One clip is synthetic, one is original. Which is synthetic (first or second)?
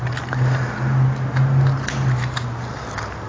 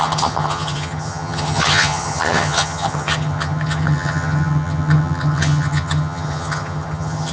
second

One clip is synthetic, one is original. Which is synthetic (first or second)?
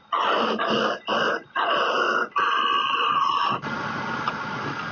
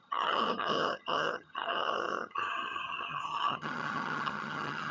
second